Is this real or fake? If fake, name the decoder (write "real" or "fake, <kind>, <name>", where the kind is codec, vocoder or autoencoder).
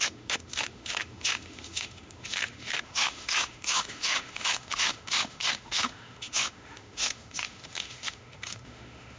fake, autoencoder, DAC-VAE